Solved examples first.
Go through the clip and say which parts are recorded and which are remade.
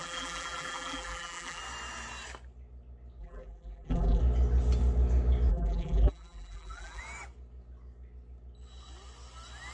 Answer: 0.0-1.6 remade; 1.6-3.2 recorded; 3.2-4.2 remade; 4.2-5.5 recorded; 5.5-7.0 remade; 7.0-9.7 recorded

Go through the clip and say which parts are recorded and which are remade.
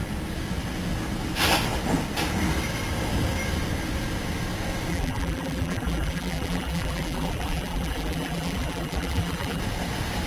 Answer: 0.0-4.9 recorded; 4.9-9.6 remade; 9.6-10.3 recorded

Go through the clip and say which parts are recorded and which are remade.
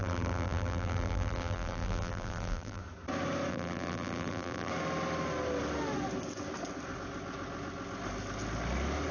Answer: 0.0-2.8 remade; 2.8-3.5 recorded; 3.5-4.7 remade; 4.7-9.1 recorded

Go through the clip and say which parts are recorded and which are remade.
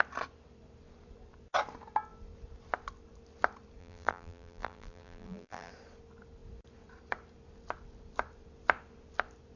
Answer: 0.0-3.8 recorded; 3.8-5.7 remade; 5.7-9.6 recorded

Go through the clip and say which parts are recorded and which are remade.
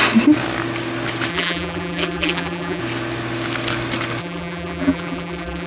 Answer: 0.0-1.3 recorded; 1.3-2.8 remade; 2.8-4.2 recorded; 4.2-5.7 remade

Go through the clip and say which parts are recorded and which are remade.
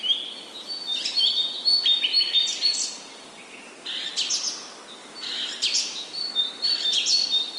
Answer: 0.0-5.0 recorded; 5.0-7.6 remade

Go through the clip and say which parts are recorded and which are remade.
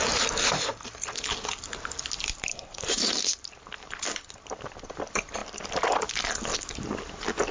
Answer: 0.0-2.5 recorded; 2.5-3.5 remade; 3.5-7.5 recorded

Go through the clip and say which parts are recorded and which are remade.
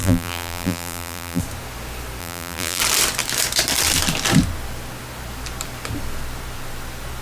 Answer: 0.0-1.4 remade; 1.4-2.2 recorded; 2.2-2.8 remade; 2.8-7.2 recorded